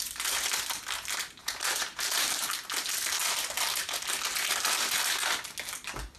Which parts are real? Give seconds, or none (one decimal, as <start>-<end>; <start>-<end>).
0.0-1.4; 2.5-6.2